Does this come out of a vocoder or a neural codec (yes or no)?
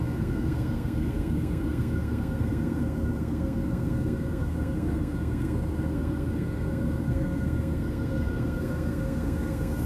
yes